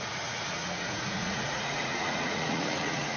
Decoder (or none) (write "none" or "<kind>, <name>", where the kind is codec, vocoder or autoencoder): vocoder, Vocos